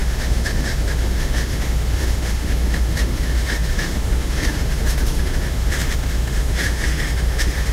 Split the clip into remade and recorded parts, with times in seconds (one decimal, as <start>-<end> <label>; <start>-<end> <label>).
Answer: 0.0-7.7 remade